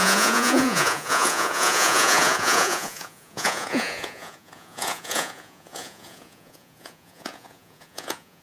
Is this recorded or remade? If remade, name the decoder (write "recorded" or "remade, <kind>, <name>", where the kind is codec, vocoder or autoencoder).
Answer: remade, vocoder, Vocos